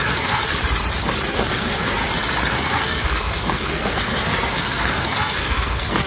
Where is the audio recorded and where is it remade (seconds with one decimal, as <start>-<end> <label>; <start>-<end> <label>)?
0.0-0.4 remade; 0.4-1.3 recorded; 1.3-2.0 remade; 2.0-2.5 recorded; 2.5-6.1 remade